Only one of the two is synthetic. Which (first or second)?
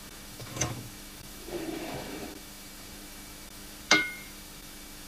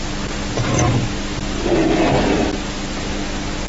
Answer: first